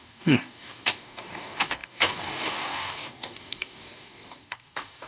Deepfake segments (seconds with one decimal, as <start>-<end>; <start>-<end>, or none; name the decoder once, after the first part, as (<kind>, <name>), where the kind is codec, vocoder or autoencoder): 0.0-5.1 (codec, DAC)